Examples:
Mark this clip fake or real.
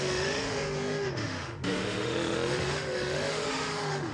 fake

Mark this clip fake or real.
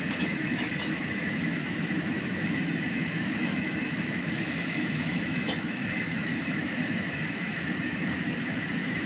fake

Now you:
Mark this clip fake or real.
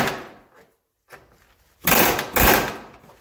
real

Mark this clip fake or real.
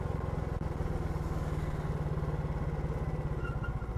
real